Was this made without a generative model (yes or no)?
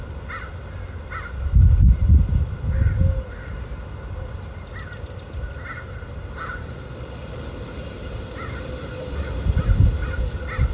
yes